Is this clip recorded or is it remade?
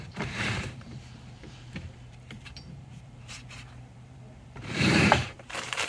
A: remade